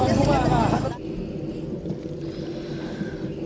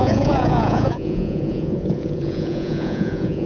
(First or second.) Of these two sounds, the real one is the first